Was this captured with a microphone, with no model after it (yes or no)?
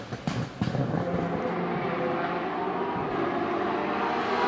yes